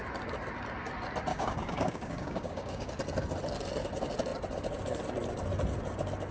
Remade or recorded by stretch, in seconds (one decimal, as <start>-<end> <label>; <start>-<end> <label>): 0.0-1.3 recorded; 1.3-2.9 remade; 2.9-6.3 recorded